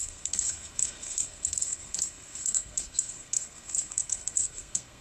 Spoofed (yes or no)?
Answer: yes